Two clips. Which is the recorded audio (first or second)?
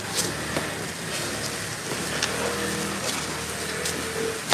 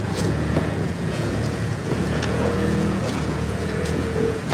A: first